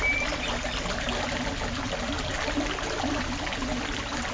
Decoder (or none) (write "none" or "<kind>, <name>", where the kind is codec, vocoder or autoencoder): none